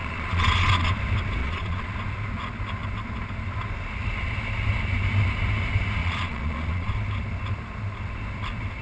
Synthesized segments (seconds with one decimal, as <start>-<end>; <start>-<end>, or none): 0.0-0.9; 1.4-1.9; 6.0-6.9